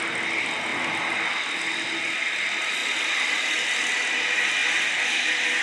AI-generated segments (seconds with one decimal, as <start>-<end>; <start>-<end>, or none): none